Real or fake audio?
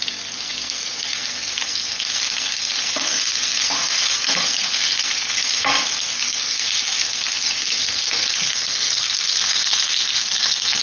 fake